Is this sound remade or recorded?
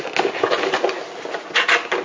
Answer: recorded